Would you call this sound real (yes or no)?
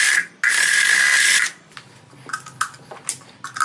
yes